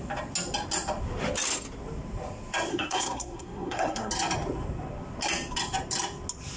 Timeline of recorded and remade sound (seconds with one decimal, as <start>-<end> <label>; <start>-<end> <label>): 0.0-2.7 recorded; 2.7-4.1 remade; 4.1-6.6 recorded